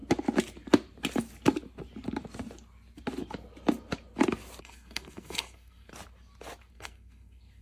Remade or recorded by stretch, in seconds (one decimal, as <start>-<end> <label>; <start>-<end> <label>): 0.0-4.6 recorded; 4.6-5.9 remade; 5.9-6.7 recorded; 6.7-7.6 remade